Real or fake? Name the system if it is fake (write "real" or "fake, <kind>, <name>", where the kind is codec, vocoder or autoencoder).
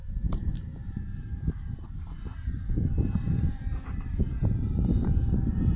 fake, vocoder, BigVGAN v2